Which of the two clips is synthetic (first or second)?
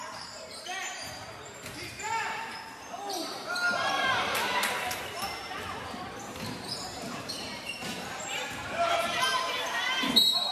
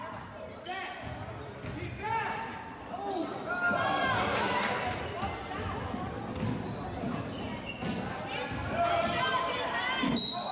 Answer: first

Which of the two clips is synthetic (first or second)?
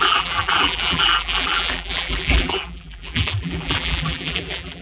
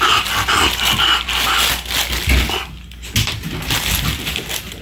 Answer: first